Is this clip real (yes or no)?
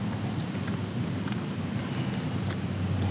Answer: yes